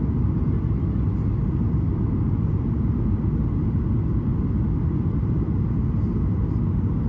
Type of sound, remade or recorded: recorded